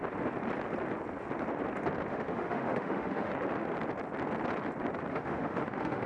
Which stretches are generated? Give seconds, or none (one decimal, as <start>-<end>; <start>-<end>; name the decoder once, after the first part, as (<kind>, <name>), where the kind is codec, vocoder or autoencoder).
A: 2.1-3.3 (autoencoder, DAC-VAE); 5.1-6.1